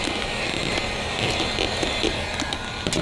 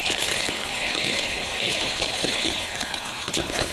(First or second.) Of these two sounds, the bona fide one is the first